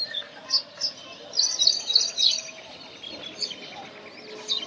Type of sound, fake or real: real